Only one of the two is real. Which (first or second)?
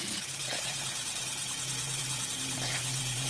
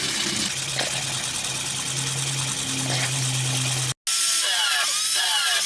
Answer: second